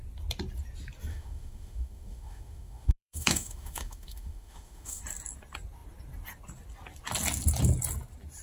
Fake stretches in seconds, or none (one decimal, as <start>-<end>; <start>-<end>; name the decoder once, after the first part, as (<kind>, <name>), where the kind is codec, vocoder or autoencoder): 1.1-5.0 (autoencoder, DAC-VAE)